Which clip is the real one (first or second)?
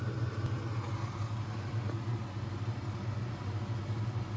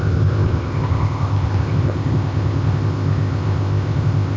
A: first